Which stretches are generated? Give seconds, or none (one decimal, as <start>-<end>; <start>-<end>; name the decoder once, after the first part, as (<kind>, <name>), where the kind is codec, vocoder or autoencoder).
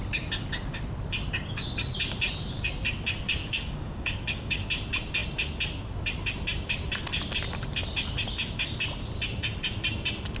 3.4-4.7 (codec, DAC)